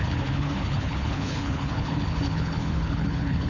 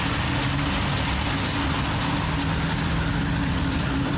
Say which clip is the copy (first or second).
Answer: first